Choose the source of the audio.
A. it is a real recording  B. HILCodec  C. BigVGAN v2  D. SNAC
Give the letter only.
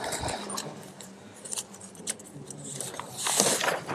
C